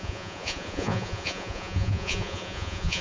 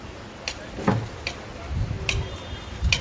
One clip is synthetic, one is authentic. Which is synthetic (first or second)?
first